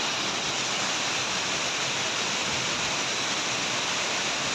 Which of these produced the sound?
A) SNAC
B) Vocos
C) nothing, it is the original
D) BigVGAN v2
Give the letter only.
C